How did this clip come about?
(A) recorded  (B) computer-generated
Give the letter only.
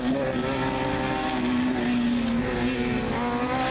A